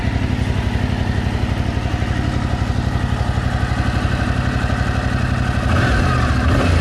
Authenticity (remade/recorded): recorded